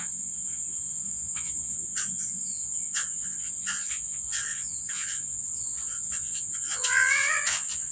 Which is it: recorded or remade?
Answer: remade